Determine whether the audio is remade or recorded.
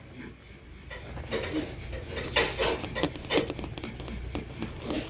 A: recorded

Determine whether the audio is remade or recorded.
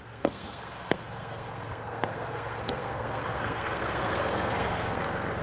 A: remade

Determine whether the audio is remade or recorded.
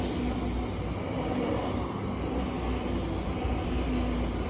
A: recorded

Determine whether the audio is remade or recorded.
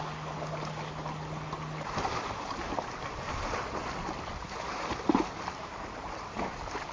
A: recorded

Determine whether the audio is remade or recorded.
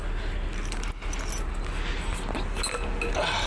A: recorded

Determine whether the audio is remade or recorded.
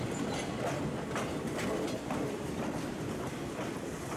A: remade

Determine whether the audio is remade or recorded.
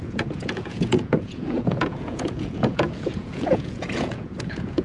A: remade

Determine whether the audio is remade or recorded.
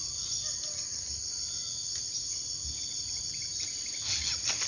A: recorded